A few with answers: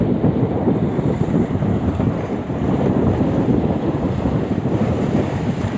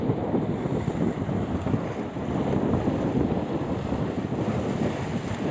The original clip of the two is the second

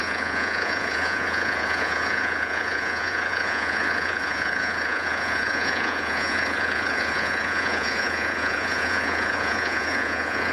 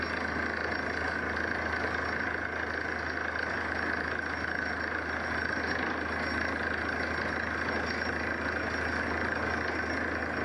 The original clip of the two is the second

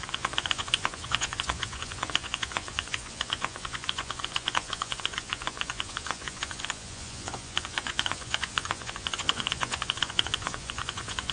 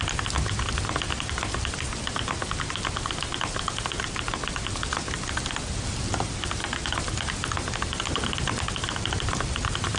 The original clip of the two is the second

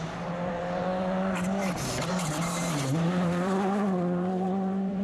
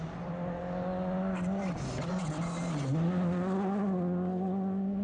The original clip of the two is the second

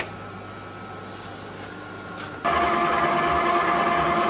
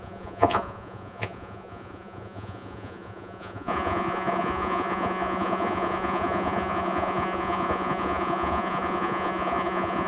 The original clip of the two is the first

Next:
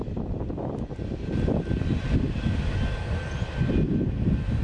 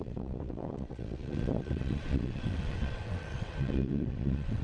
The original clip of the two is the first